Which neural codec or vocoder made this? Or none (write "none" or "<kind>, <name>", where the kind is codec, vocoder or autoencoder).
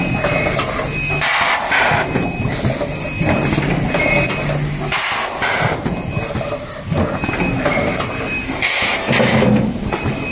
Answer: none